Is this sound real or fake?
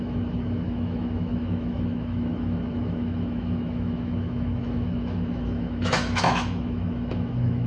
fake